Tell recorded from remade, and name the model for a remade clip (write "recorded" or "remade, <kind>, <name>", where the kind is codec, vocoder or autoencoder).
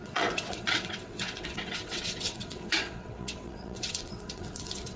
remade, vocoder, WaveNeXt